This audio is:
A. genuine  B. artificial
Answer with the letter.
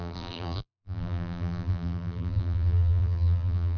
B